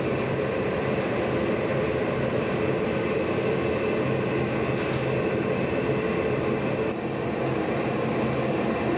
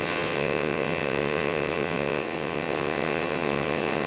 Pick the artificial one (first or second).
second